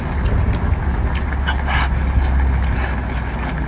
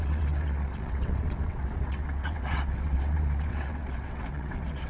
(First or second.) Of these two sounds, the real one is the first